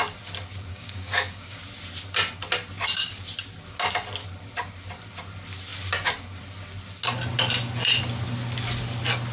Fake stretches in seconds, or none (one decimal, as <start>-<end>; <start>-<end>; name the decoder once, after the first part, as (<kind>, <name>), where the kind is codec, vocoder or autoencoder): 0.7-1.6 (codec, DAC)